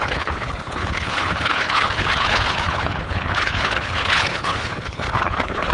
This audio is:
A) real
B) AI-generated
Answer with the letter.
B